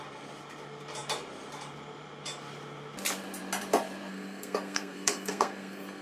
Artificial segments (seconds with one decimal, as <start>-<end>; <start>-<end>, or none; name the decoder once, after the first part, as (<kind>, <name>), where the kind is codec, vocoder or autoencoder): 4.1-6.0 (codec, SNAC)